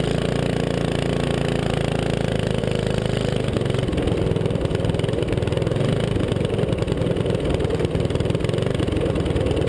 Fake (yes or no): no